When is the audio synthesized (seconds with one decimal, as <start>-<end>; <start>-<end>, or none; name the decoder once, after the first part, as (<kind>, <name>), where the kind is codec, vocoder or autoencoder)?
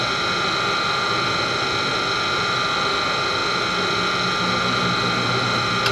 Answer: none